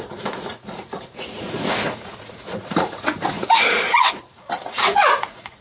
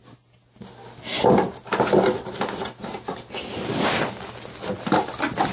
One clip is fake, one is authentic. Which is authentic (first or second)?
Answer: second